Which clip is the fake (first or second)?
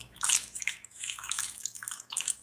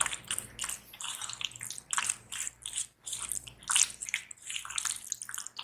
first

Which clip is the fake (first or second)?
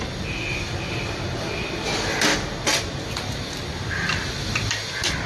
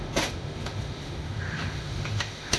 second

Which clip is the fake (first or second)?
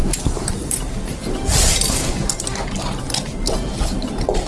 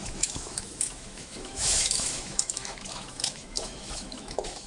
second